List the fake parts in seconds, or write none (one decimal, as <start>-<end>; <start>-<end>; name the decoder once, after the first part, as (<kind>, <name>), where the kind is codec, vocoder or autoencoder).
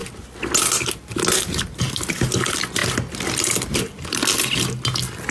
none